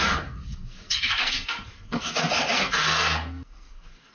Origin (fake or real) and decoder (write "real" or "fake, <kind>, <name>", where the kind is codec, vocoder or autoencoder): fake, codec, SNAC